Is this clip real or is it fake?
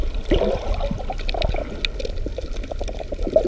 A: real